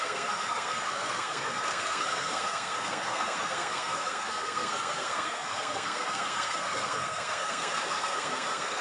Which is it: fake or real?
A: fake